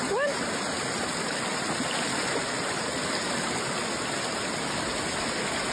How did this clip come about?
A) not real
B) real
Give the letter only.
B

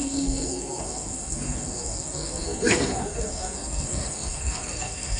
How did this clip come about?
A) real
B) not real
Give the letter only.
B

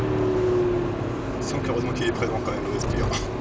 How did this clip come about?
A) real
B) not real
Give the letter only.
A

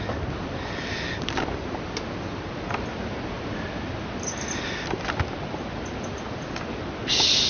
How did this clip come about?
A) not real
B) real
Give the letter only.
B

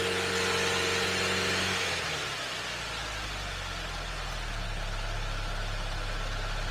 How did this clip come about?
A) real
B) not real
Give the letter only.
A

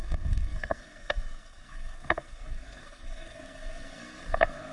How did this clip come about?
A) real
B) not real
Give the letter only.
B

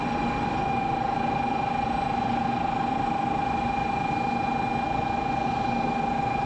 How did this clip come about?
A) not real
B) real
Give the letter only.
B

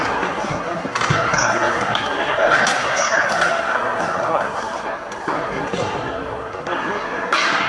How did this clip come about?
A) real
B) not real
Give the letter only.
B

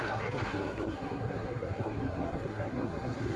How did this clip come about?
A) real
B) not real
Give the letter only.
B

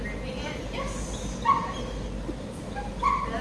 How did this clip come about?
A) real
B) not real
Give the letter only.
A